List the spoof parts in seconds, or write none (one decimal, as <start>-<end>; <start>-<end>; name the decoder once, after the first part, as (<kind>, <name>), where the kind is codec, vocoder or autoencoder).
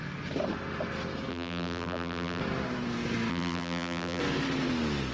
1.3-2.4 (vocoder, BigVGAN v2); 3.3-4.2